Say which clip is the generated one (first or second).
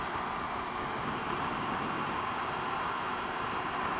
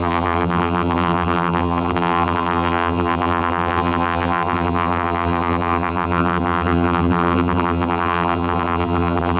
second